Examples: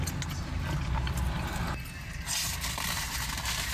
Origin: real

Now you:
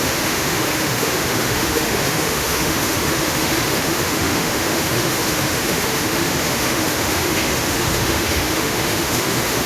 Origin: fake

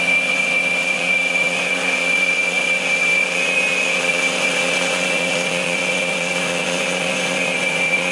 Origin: fake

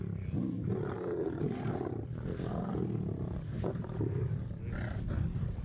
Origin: real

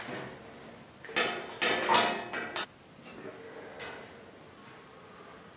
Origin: real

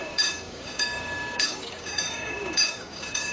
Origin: fake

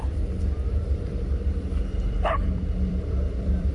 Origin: fake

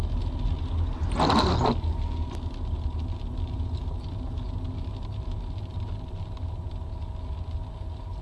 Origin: real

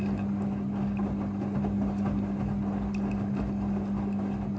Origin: real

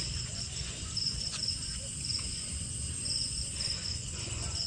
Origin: fake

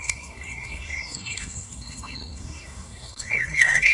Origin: fake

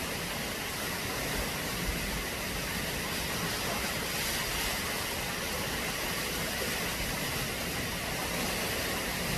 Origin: real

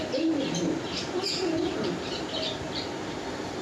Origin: real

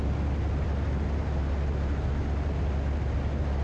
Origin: real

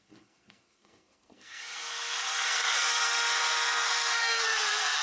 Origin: fake